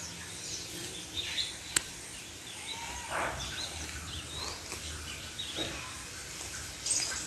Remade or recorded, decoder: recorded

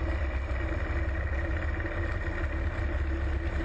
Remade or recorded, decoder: recorded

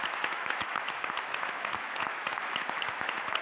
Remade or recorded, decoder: remade, autoencoder, DAC-VAE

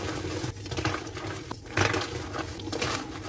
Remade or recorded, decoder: recorded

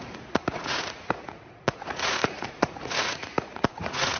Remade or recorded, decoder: remade, vocoder, Vocos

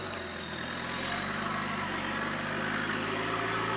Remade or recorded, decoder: recorded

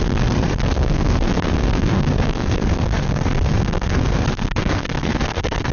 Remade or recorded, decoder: remade, codec, SNAC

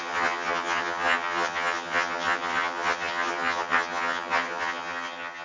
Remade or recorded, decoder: remade, vocoder, HiFi-GAN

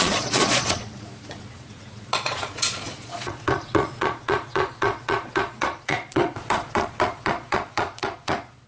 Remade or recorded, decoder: remade, vocoder, Vocos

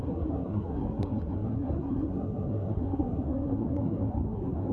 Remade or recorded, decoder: remade, codec, SNAC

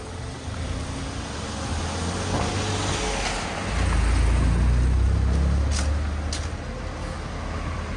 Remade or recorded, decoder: recorded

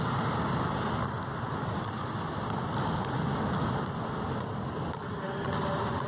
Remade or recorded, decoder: recorded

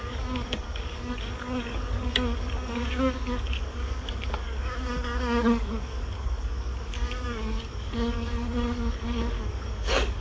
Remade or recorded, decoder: remade, codec, DAC